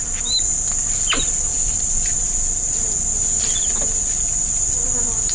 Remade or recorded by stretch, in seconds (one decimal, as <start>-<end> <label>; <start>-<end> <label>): 0.0-1.5 recorded; 1.5-2.2 remade; 2.2-3.1 recorded; 3.1-3.7 remade; 3.7-5.3 recorded